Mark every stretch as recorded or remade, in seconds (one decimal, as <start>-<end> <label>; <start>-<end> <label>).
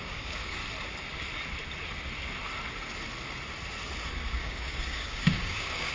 0.0-0.6 remade; 0.6-4.1 recorded; 4.1-5.9 remade